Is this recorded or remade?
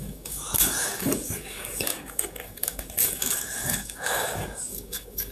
remade